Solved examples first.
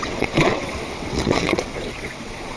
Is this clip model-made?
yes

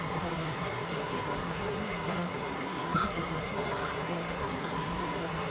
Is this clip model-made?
yes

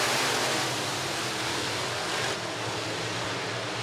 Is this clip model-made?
no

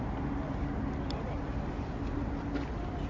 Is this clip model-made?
no